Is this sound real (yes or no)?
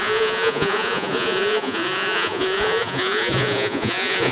no